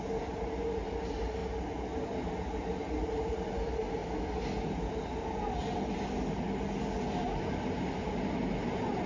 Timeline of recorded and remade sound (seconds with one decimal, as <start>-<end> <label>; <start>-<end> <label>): 0.0-9.1 recorded